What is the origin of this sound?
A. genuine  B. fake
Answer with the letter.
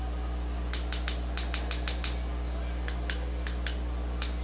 A